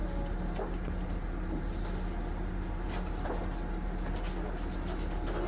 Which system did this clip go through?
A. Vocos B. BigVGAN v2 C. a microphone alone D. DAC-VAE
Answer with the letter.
C